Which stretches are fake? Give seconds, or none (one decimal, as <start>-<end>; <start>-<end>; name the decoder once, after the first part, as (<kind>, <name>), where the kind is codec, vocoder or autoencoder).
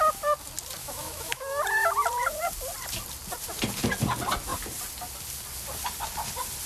0.8-1.6 (autoencoder, DAC-VAE)